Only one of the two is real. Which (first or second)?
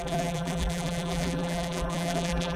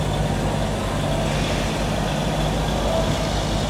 second